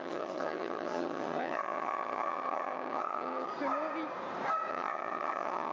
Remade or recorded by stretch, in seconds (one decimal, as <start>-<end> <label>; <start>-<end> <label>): 0.0-3.5 remade; 3.5-4.7 recorded; 4.7-5.7 remade